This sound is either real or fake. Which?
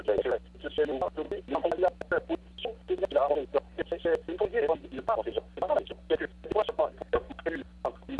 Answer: real